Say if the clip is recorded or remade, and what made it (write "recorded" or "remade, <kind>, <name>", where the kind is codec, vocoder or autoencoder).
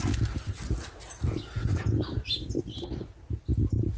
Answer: recorded